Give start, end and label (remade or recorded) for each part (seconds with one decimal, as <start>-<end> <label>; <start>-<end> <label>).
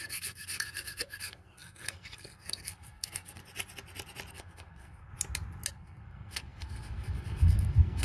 0.0-3.4 remade; 3.4-4.3 recorded; 4.3-5.1 remade; 5.1-5.7 recorded; 5.7-8.0 remade